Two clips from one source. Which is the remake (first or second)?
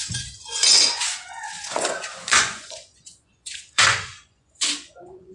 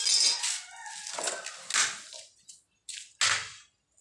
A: first